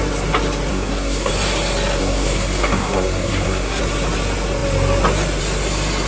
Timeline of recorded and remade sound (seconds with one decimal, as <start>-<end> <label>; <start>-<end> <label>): 0.0-0.7 recorded; 0.7-1.3 remade; 1.3-2.0 recorded; 2.0-3.8 remade; 3.8-6.1 recorded